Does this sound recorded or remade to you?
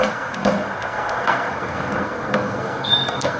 remade